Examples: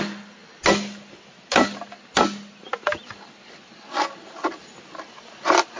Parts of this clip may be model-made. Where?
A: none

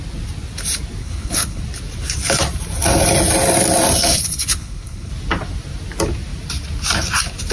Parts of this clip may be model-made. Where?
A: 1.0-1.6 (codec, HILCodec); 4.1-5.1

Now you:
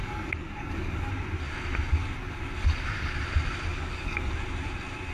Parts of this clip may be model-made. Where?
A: 0.0-1.1 (codec, DAC); 3.7-4.3